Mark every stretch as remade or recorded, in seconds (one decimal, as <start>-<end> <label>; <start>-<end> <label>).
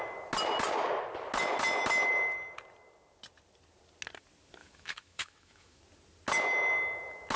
0.0-4.6 recorded; 4.6-5.8 remade; 5.8-7.4 recorded